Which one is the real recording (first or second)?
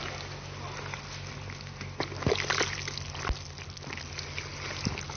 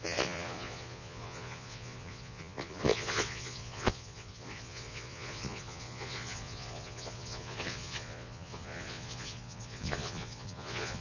first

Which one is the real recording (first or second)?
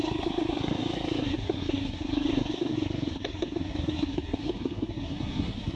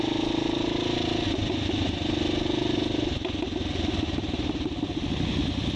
second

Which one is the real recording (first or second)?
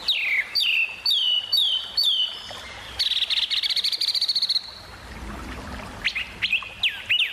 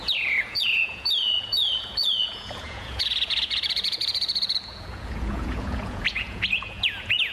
first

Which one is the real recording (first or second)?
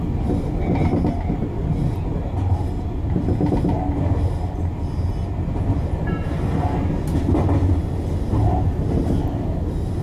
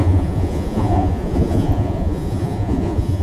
first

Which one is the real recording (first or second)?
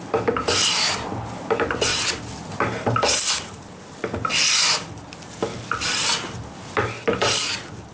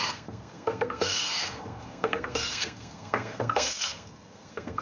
first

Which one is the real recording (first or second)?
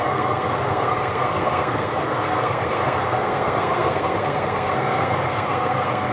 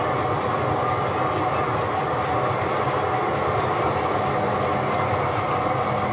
second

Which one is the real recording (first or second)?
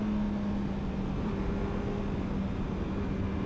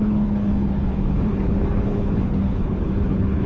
first